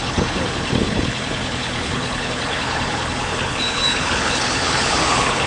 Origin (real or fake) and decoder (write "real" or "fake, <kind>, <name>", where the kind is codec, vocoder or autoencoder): fake, codec, HILCodec